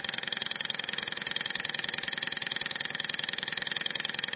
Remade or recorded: recorded